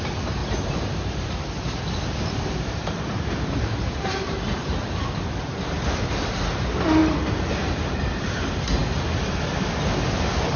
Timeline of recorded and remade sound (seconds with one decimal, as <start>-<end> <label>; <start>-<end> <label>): 0.0-0.4 recorded; 0.4-5.0 remade; 5.0-10.6 recorded